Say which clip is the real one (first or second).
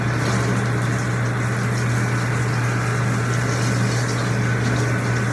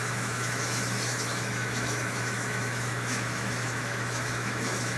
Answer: first